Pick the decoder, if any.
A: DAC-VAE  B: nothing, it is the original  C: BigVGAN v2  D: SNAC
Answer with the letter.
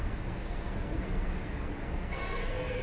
D